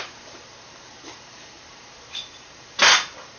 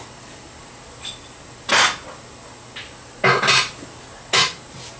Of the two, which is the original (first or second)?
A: second